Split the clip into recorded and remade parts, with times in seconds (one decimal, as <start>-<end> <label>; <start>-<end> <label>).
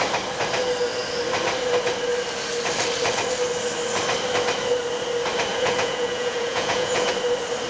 0.0-5.5 recorded; 5.5-7.1 remade; 7.1-7.7 recorded